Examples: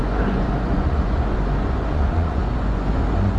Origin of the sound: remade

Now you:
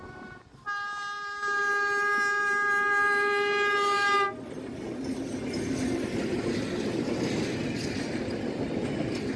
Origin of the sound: recorded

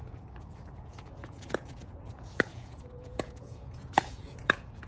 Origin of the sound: remade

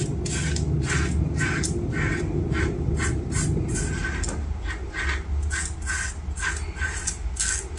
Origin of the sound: recorded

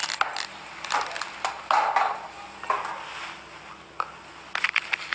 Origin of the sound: recorded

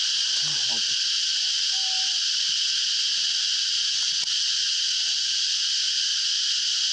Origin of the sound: recorded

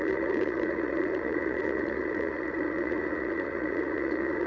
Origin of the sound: remade